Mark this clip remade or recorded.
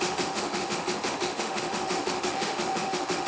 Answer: remade